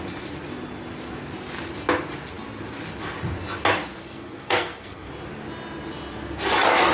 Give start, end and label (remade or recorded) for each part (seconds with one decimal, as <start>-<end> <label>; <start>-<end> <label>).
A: 0.0-4.0 recorded; 4.0-5.1 remade; 5.1-6.9 recorded